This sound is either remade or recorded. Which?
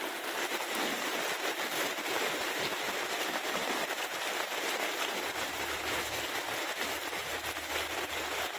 remade